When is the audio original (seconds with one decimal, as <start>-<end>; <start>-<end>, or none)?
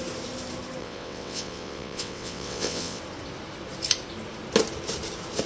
0.0-0.8; 3.0-5.5